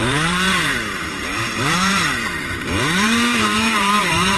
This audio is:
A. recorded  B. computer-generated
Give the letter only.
B